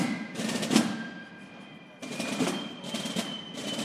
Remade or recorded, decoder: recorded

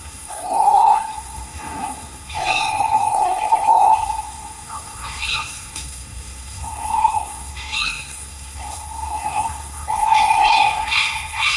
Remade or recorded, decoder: remade, codec, SNAC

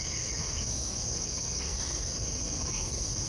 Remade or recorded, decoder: remade, codec, SNAC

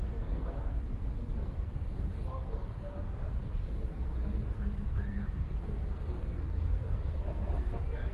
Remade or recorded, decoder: remade, codec, SNAC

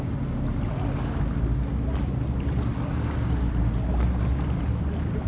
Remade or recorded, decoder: recorded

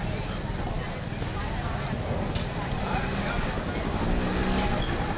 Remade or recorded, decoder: recorded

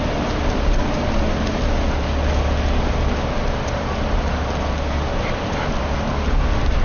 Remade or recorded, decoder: recorded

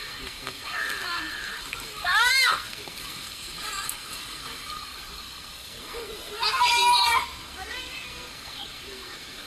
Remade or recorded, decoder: remade, codec, SNAC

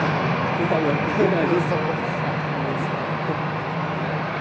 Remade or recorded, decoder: recorded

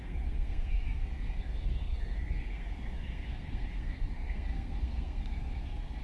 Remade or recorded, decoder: remade, codec, SNAC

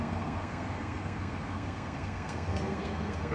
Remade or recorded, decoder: remade, codec, SNAC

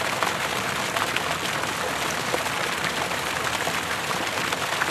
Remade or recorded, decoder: recorded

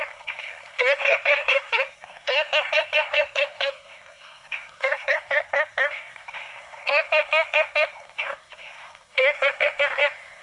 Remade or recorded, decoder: remade, codec, SNAC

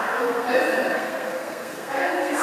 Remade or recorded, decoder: remade, codec, SNAC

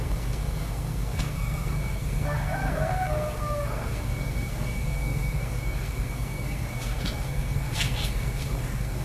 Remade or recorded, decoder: remade, codec, SNAC